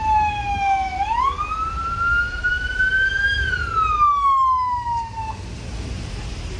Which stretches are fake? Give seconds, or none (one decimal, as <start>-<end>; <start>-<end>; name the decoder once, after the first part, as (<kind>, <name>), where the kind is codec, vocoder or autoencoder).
0.5-1.2 (autoencoder, DAC-VAE); 2.5-3.5